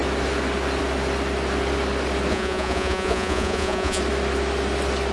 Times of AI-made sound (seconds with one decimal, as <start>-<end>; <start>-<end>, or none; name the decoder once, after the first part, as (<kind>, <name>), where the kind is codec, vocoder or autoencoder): 2.3-4.0 (vocoder, Vocos)